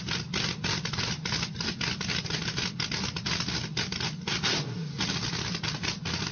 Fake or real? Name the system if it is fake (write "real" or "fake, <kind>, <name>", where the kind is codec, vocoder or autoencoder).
real